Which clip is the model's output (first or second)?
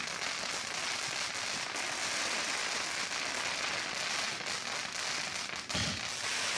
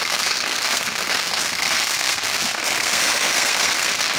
second